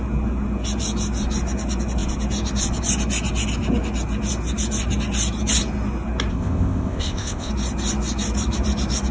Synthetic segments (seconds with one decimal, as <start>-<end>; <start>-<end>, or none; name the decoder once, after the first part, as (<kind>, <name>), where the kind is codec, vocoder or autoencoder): 6.3-7.5 (codec, ZipCodec)